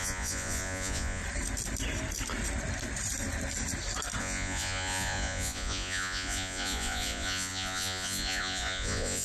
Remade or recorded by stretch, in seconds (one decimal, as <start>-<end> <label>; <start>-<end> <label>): 0.0-1.2 remade; 1.2-4.2 recorded; 4.2-9.2 remade